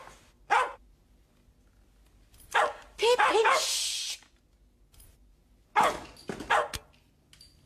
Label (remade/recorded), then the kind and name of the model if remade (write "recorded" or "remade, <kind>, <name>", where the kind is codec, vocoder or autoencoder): recorded